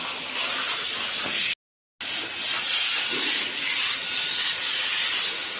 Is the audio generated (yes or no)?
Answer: no